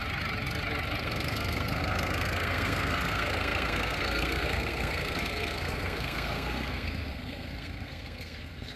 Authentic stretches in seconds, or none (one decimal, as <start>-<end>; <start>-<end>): 0.0-1.0